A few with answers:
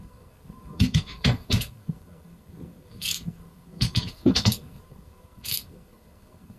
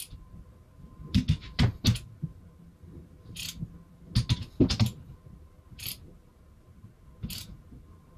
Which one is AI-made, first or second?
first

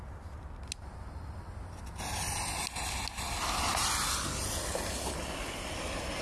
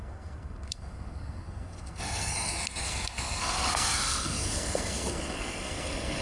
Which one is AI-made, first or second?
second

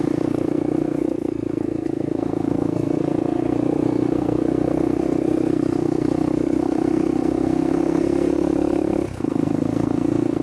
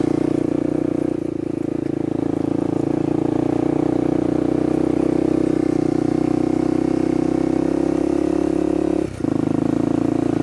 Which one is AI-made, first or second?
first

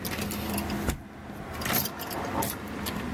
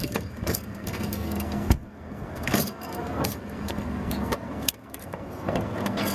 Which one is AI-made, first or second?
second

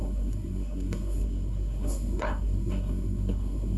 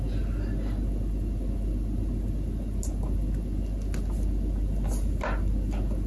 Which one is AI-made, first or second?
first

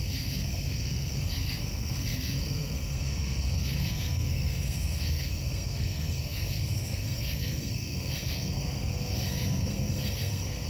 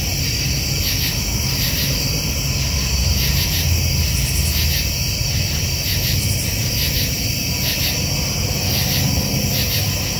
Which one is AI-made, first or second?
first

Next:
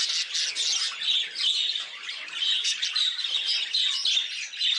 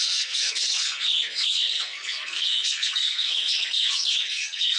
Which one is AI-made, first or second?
second